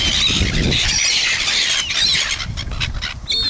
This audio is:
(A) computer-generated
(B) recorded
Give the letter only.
B